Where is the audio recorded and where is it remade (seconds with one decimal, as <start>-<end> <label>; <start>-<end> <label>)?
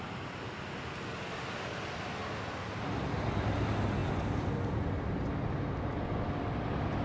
0.0-7.0 recorded